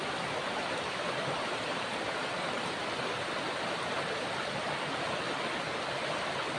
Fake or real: real